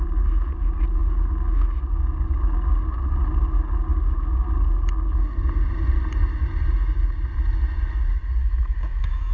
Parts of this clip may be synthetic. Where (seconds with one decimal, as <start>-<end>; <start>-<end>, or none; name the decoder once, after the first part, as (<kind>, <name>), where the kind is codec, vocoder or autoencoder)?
8.4-9.3 (autoencoder, DAC-VAE)